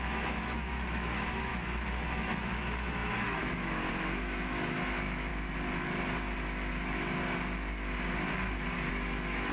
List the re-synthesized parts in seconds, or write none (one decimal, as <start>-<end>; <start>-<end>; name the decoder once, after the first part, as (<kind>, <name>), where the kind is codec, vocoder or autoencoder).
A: 0.0-5.3 (autoencoder, DAC-VAE); 8.9-9.5